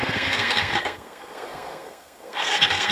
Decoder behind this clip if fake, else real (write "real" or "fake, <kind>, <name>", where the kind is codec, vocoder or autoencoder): fake, codec, SNAC